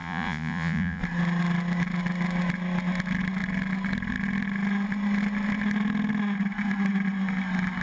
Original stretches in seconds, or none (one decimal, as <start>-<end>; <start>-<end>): 1.0-7.8